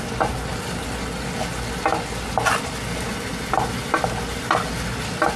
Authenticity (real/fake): real